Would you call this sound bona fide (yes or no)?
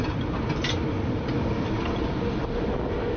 yes